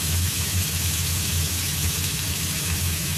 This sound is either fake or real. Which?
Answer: fake